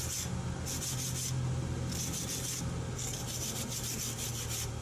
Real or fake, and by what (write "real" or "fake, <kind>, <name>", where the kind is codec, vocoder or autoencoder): real